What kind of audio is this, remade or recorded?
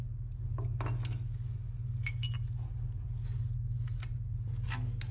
recorded